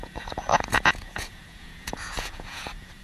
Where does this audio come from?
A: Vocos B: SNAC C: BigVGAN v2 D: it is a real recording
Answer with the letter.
A